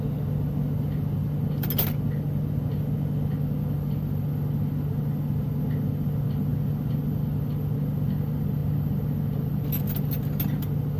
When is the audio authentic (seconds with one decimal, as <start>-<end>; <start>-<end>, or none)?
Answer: 0.0-11.0

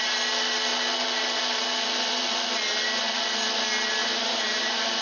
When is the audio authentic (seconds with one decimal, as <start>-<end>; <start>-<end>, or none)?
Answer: 0.0-4.0

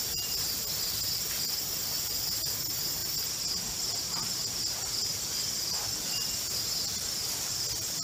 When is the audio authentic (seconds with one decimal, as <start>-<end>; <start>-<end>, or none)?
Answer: 0.0-8.0

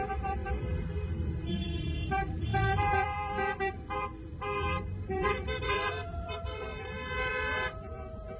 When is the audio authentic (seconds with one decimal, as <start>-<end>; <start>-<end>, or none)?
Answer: 0.4-1.5